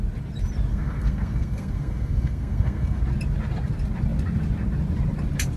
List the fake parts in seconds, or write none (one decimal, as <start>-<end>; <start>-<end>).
0.7-3.0